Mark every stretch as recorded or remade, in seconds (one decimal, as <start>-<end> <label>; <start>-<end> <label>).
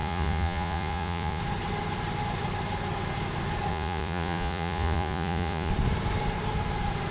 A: 0.0-1.4 remade; 1.4-3.7 recorded; 3.7-5.7 remade; 5.7-7.1 recorded